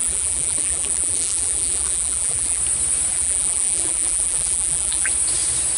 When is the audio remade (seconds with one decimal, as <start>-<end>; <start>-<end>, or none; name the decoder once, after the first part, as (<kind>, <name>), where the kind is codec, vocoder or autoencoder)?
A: 0.0-2.6 (vocoder, BigVGAN v2); 3.1-5.1